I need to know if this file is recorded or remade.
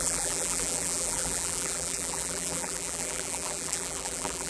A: remade